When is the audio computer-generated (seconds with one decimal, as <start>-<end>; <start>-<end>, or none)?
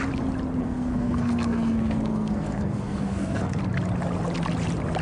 0.6-3.6